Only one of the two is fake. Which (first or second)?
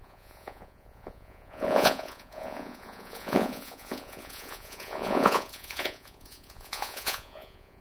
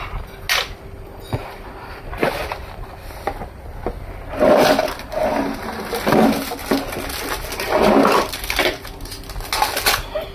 first